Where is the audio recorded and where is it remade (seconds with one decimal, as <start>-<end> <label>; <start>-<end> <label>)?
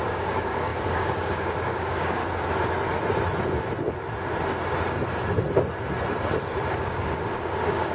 0.0-2.2 remade; 2.2-6.7 recorded; 6.7-7.9 remade